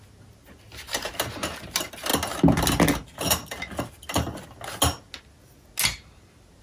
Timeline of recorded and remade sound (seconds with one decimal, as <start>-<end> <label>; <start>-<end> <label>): 0.0-6.6 recorded